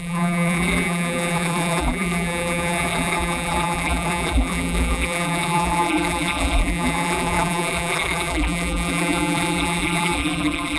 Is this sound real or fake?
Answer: fake